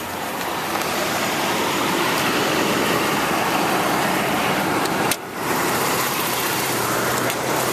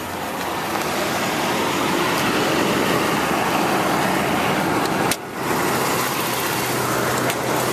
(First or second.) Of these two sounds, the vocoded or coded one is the first